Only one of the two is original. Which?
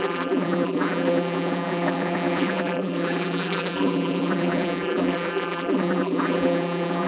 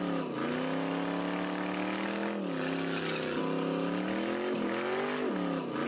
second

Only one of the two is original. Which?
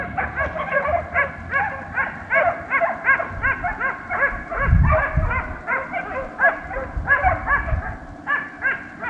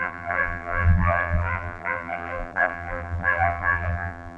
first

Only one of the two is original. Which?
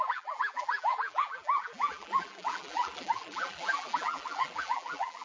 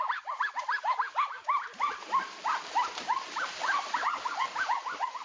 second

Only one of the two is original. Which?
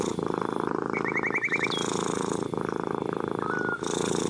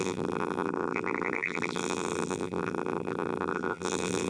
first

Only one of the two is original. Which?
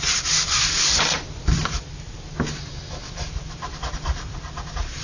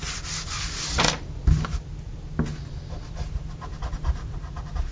second